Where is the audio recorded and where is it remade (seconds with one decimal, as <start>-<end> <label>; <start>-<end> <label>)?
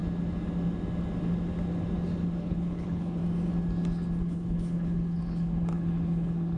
0.0-2.4 recorded; 2.4-3.2 remade; 3.2-4.2 recorded; 4.2-6.6 remade